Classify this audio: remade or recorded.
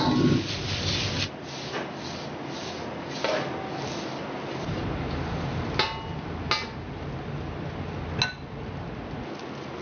recorded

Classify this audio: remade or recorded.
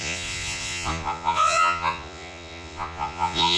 remade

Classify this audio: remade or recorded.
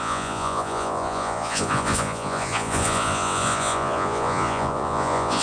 remade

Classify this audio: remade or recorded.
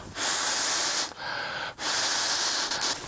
recorded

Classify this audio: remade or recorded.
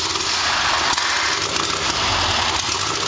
recorded